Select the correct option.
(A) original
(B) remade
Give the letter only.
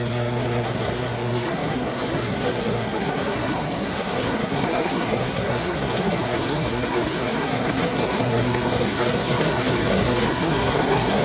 B